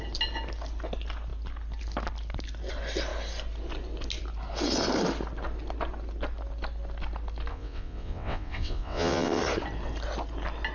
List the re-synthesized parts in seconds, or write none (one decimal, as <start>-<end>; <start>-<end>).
7.5-9.4